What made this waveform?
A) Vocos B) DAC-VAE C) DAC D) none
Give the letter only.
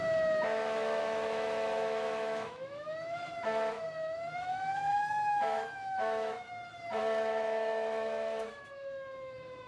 B